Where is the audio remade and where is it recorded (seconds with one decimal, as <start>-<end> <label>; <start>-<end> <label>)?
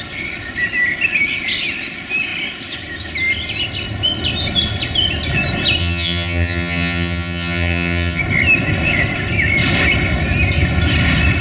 0.0-5.8 recorded; 5.8-8.2 remade; 8.2-11.4 recorded